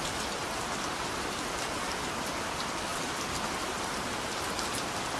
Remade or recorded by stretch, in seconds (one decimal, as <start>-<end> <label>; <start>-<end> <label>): 0.0-5.2 recorded